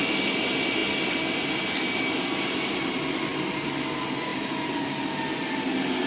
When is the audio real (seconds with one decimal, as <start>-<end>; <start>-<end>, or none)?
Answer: 0.0-6.1